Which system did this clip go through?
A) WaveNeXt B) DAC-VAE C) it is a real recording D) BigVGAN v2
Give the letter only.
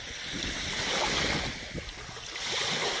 C